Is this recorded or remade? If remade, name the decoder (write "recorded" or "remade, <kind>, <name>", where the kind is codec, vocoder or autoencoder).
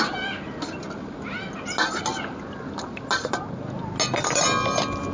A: recorded